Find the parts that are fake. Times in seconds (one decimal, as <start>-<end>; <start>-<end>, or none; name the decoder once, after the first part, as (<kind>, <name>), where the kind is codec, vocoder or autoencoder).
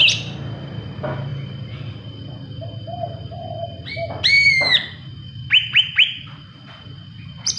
none